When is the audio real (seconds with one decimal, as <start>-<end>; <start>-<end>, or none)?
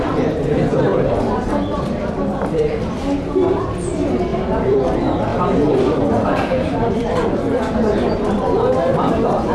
0.0-0.9; 2.9-4.3; 4.8-5.3; 7.6-9.5